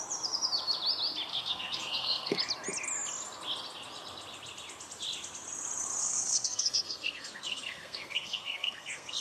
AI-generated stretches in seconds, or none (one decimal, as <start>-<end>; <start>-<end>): 1.3-2.4; 6.0-9.2

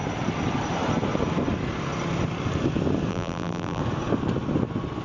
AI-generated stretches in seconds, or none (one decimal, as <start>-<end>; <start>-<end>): 3.1-3.8